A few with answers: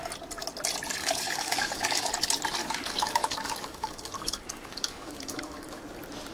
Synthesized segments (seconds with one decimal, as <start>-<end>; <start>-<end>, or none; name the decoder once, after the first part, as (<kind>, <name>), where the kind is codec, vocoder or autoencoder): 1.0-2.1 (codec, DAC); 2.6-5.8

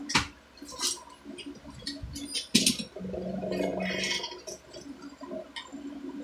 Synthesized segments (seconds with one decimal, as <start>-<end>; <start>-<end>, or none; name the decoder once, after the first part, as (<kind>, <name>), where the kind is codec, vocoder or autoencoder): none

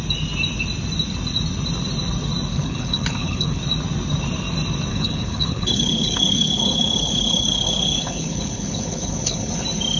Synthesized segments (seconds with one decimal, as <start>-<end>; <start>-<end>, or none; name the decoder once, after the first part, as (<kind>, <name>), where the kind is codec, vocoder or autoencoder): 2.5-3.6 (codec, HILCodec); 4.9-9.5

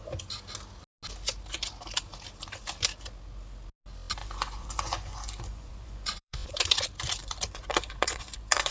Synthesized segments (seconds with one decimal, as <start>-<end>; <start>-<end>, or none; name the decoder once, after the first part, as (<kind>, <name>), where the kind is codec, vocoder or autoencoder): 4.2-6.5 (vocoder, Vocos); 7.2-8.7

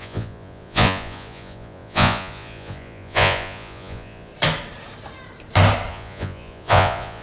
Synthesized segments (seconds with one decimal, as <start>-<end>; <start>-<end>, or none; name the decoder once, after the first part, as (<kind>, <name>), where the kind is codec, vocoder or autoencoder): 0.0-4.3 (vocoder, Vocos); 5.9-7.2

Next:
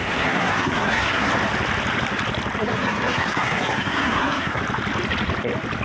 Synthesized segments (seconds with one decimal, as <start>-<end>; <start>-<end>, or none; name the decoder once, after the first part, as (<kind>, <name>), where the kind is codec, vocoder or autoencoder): 0.0-1.3 (codec, SNAC); 2.7-4.6